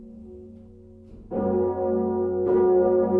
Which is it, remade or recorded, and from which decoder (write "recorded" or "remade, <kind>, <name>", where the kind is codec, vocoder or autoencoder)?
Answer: recorded